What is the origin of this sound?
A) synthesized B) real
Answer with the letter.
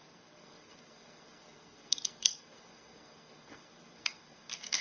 A